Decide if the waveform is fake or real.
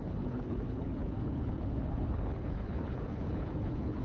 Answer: fake